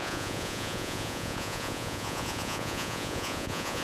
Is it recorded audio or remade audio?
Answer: remade